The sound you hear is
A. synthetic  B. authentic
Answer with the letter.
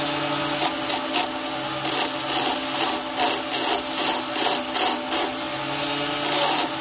B